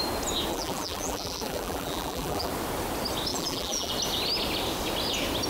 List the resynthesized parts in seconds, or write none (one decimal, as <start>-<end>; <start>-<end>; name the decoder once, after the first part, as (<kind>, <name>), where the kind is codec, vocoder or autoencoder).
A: 0.5-2.5 (vocoder, BigVGAN v2); 3.3-3.9